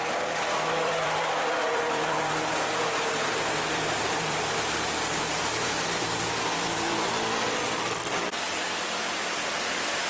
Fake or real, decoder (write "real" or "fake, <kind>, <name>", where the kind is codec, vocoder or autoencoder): fake, vocoder, BigVGAN v2